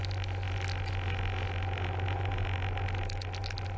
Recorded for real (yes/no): yes